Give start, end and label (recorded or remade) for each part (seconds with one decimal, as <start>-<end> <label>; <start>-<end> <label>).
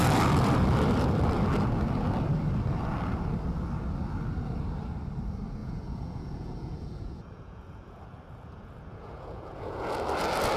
0.0-5.6 recorded; 5.6-9.9 remade; 9.9-10.6 recorded